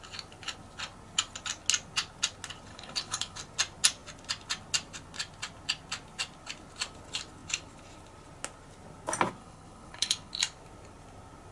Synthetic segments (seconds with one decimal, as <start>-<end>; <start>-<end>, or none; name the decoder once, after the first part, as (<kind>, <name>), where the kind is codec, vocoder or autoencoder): 2.7-3.4 (codec, HILCodec); 9.4-10.3